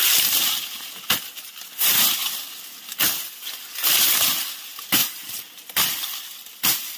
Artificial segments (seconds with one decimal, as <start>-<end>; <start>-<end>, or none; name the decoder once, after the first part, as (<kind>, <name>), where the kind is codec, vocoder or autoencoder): 5.0-7.0 (vocoder, BigVGAN v2)